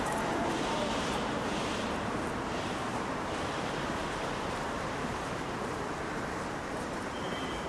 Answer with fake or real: fake